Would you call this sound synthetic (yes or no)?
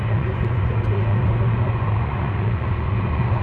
yes